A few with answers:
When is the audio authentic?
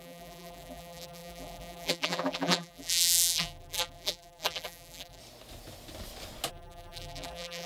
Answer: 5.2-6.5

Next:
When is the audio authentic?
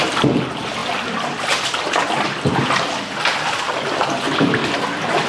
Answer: 0.0-5.3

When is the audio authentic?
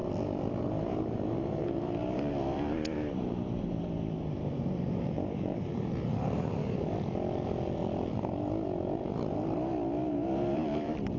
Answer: 0.0-0.7; 6.6-10.1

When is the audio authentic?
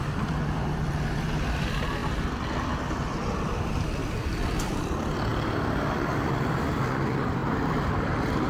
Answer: 2.0-3.5; 4.0-4.6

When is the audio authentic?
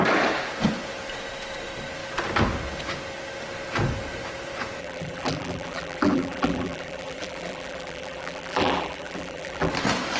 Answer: 0.0-4.8; 9.7-10.2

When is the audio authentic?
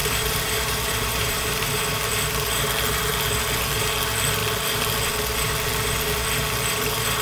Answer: 1.8-7.2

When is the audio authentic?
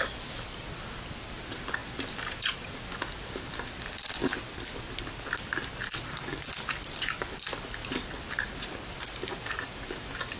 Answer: 0.0-10.4